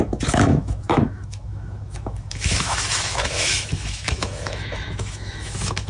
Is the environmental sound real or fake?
fake